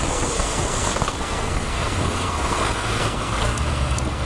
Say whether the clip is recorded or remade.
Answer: remade